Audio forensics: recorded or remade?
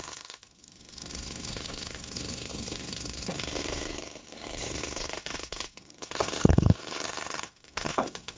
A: remade